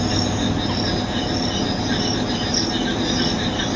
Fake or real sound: real